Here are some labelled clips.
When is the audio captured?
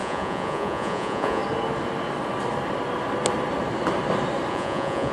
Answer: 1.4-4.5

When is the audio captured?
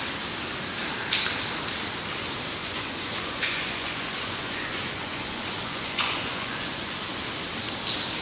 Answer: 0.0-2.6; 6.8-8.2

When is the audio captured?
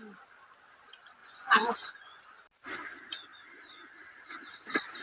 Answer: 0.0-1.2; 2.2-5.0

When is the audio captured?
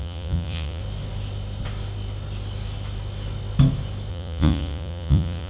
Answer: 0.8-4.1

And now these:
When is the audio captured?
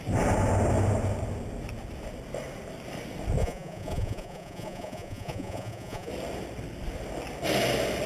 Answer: 0.0-3.4; 6.1-8.1